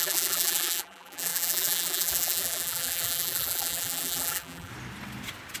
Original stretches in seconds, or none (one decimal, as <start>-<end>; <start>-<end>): 4.7-5.6